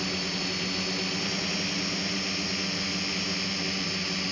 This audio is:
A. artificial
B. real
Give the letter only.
B